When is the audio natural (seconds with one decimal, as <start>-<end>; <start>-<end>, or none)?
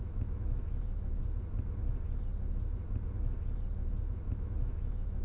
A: 1.2-4.3